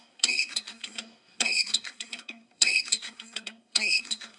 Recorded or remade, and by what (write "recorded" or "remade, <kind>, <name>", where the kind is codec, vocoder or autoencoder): remade, codec, SNAC